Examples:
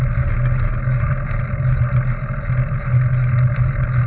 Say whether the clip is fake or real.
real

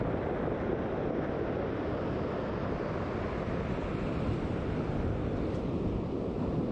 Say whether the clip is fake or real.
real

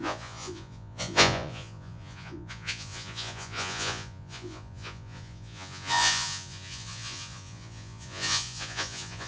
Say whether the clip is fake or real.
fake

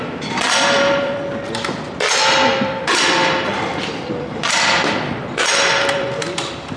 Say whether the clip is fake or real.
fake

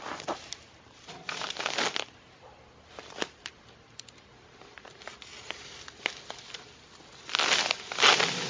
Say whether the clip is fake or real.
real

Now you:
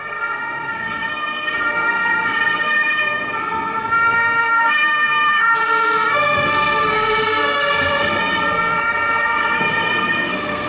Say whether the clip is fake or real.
fake